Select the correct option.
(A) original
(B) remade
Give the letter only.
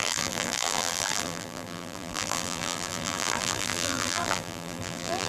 B